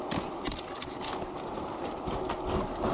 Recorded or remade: recorded